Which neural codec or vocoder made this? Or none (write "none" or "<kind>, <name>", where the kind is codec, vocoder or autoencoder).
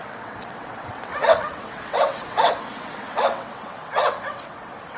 vocoder, WaveNeXt